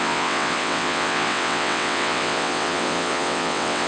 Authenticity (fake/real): fake